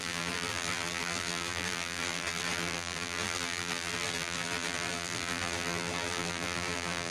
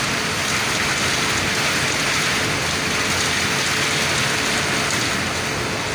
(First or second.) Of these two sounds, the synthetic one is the first